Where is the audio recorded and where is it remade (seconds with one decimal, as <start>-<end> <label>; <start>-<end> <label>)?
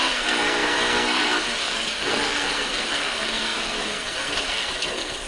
0.0-5.3 remade